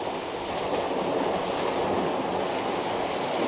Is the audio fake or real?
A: real